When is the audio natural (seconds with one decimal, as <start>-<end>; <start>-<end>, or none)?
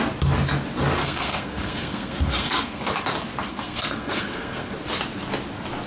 0.0-1.0; 2.8-3.5; 4.7-5.9